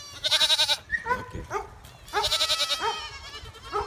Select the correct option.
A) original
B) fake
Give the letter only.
A